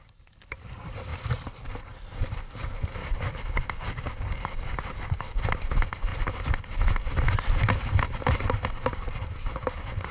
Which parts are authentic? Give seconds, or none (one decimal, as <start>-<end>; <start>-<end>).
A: 0.0-3.0; 5.4-10.1